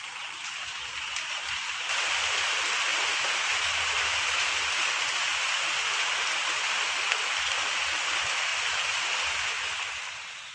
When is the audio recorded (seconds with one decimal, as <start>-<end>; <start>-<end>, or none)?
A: 0.0-2.9; 4.5-10.5